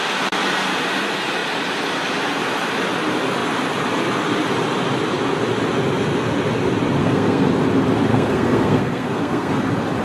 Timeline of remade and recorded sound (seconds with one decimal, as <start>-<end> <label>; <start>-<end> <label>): 0.0-7.0 recorded; 7.0-7.5 remade; 7.5-8.1 recorded; 8.1-9.5 remade; 9.5-10.0 recorded